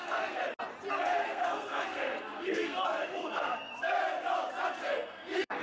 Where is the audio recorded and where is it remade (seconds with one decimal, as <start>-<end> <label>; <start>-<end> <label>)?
0.0-0.4 remade; 0.4-0.9 recorded; 0.9-4.0 remade; 4.0-4.8 recorded; 4.8-5.6 remade